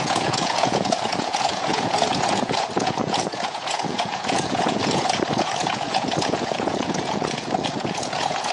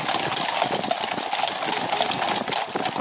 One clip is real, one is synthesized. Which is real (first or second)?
second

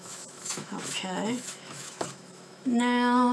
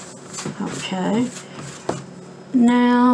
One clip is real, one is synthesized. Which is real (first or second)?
second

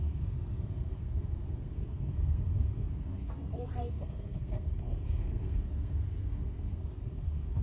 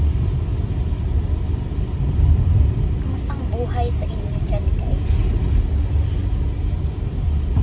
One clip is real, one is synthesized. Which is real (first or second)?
second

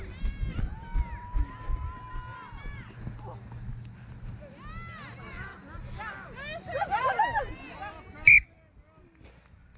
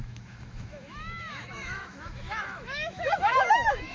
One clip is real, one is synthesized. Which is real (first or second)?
first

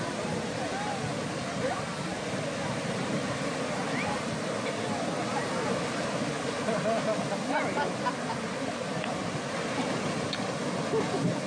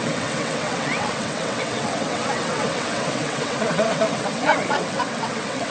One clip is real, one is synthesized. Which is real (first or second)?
first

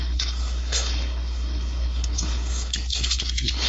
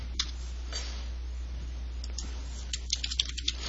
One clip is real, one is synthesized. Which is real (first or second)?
second